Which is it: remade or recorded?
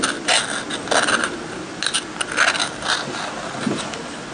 recorded